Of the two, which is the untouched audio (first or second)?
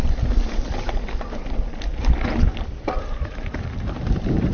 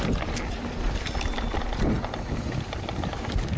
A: second